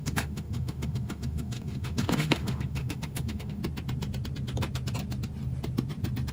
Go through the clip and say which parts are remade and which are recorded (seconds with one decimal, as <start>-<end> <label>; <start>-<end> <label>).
0.0-3.6 remade; 3.6-6.3 recorded